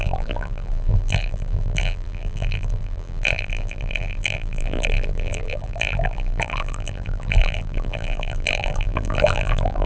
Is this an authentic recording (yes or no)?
no